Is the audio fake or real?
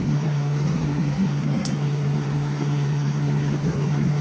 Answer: fake